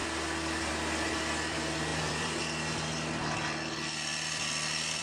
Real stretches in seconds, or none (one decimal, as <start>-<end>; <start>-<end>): 0.0-1.9; 2.4-5.0